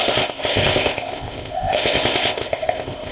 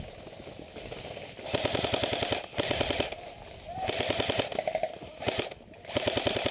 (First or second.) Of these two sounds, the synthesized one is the first